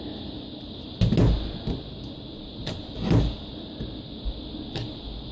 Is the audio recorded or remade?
recorded